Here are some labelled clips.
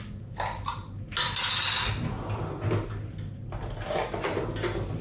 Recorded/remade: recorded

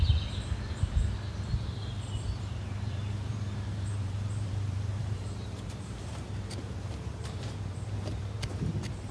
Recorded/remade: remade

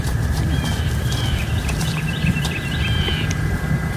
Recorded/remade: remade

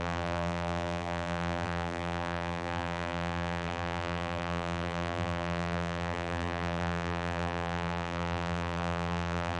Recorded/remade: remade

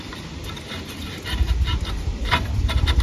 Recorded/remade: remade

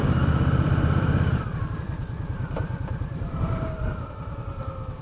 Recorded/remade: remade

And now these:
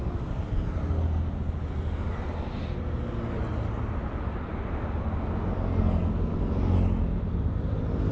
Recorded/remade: recorded